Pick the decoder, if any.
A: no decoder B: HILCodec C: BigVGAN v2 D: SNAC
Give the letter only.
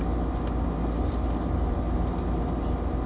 A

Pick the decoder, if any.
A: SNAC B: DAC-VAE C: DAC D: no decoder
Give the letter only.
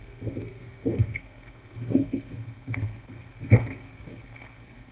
A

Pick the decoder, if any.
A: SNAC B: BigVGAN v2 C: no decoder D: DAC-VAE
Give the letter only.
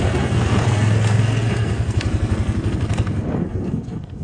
A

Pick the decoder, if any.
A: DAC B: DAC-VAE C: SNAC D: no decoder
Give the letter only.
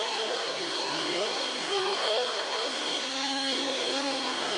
C